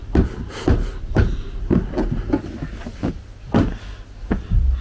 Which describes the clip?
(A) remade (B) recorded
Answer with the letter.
B